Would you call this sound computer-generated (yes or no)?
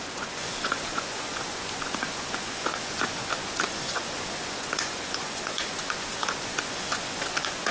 yes